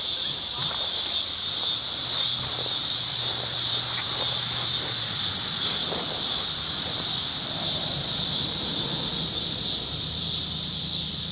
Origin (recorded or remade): remade